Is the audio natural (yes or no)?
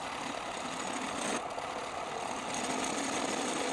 yes